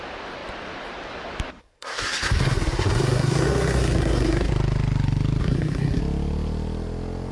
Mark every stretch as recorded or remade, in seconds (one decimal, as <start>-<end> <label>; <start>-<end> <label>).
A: 0.0-1.6 recorded; 1.6-4.5 remade; 4.5-5.4 recorded; 5.4-6.0 remade; 6.0-7.3 recorded